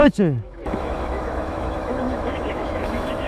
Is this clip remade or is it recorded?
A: remade